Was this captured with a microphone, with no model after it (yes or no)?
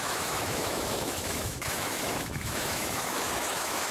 no